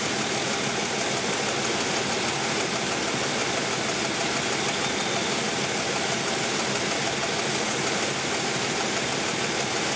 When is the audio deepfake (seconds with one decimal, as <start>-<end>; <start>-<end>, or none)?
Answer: none